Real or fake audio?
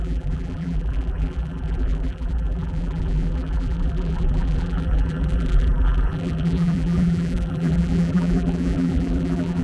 fake